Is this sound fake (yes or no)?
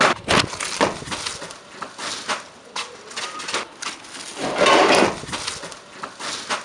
no